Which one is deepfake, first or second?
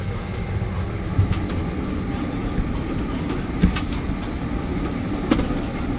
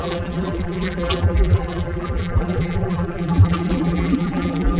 second